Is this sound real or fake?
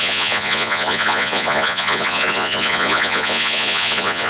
fake